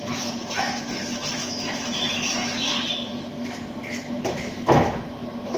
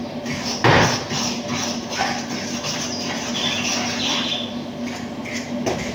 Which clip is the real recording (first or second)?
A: second